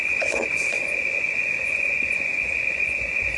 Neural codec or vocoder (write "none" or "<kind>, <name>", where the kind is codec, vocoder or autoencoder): vocoder, Vocos